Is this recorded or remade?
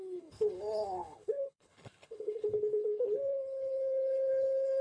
remade